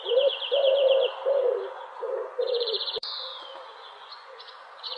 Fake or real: fake